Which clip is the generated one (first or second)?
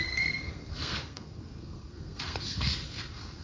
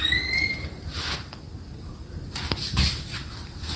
first